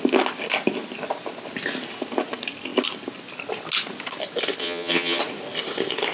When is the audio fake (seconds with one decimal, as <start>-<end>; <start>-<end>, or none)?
4.6-5.2